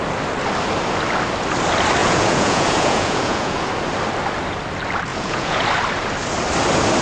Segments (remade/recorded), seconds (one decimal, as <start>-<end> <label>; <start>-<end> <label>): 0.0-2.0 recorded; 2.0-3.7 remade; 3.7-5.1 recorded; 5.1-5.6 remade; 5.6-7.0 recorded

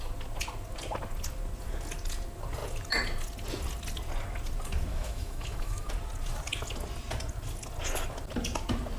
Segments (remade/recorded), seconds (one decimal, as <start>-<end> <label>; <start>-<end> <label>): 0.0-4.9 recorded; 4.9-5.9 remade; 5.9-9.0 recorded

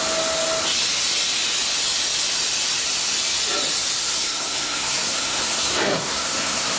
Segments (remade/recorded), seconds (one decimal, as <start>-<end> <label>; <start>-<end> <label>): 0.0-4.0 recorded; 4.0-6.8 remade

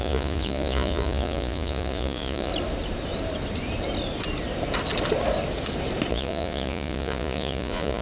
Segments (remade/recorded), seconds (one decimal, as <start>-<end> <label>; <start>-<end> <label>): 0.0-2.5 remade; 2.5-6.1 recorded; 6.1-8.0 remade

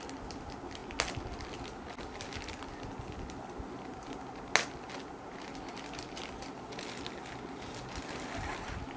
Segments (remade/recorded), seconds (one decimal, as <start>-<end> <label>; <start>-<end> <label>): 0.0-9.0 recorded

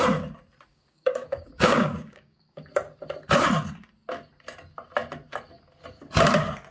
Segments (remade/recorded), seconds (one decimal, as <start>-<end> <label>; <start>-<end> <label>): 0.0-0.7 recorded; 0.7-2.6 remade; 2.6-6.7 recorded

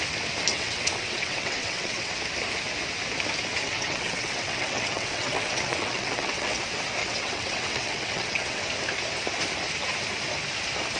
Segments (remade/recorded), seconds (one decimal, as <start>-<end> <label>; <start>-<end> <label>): 0.0-0.5 recorded; 0.5-2.1 remade; 2.1-3.6 recorded; 3.6-6.6 remade; 6.6-7.0 recorded; 7.0-8.6 remade; 8.6-11.0 recorded

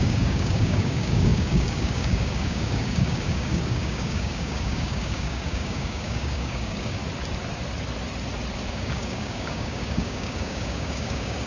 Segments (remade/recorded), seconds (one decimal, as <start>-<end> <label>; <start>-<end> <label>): 0.0-7.0 remade; 7.0-8.7 recorded; 8.7-11.5 remade